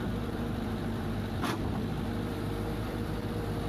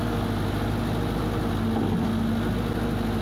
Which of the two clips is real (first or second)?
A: second